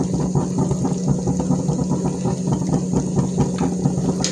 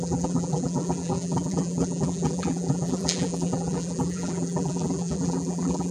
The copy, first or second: second